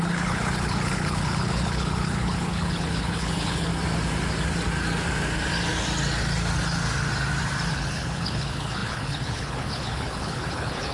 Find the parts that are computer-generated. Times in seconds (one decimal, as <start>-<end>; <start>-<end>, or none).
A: 0.0-3.7; 7.7-10.9